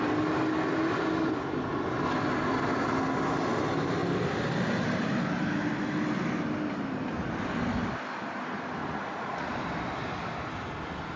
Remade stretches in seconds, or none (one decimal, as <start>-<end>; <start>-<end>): 8.8-9.5